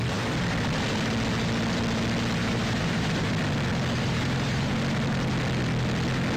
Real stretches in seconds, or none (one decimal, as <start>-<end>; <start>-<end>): 0.0-2.4; 3.2-4.0; 4.7-6.4